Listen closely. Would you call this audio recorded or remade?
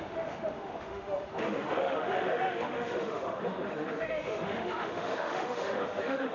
remade